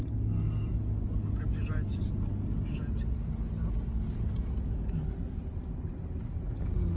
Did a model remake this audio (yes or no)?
no